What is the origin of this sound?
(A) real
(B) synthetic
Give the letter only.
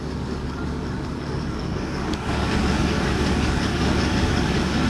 B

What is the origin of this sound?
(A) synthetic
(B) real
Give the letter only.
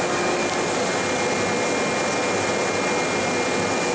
B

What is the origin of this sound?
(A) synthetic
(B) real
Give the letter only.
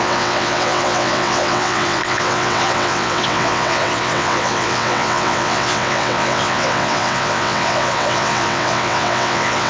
A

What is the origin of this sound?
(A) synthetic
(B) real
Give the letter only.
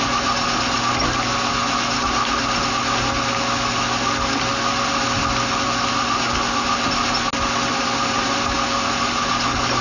B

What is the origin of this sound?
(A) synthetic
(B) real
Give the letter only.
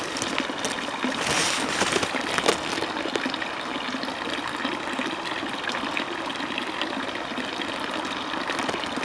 B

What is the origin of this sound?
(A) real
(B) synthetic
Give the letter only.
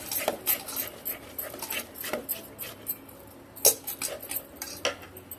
A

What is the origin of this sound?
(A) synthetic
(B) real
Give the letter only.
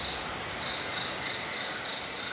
B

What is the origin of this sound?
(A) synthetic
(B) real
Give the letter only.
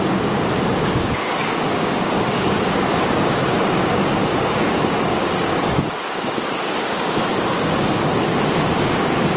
A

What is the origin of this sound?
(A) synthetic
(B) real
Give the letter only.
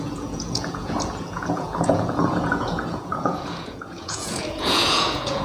A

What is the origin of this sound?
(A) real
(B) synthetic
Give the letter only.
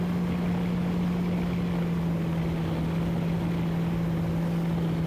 A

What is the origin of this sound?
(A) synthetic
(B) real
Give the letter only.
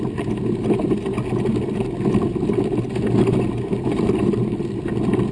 B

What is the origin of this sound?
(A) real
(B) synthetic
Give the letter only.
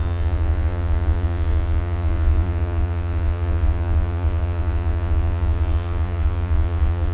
B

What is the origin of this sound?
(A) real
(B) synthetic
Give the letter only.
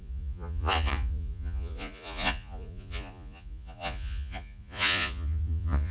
B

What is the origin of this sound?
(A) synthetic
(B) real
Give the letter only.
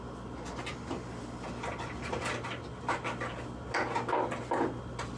B